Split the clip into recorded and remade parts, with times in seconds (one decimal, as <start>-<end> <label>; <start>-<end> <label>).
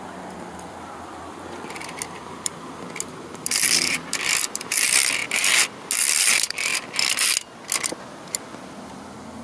0.0-5.2 remade; 5.2-6.0 recorded; 6.0-6.7 remade; 6.7-8.0 recorded; 8.0-9.4 remade